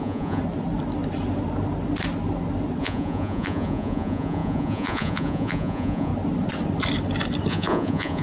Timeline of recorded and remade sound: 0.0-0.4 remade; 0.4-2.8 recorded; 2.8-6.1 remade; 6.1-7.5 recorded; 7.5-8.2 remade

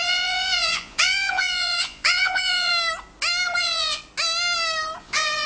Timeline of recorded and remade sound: 0.0-2.7 remade; 2.7-3.6 recorded; 3.6-4.0 remade; 4.0-5.0 recorded; 5.0-5.5 remade

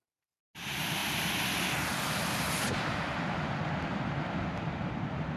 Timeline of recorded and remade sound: 0.0-5.4 recorded

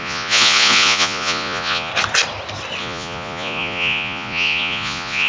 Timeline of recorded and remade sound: 0.0-1.9 remade; 1.9-2.8 recorded; 2.8-5.3 remade